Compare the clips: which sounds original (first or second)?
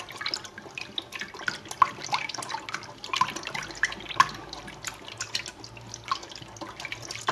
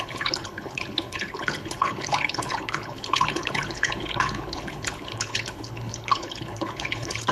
first